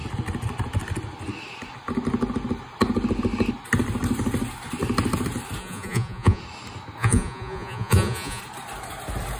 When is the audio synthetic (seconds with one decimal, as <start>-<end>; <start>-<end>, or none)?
5.6-6.4; 7.0-8.4